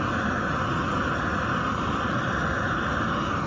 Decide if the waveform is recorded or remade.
recorded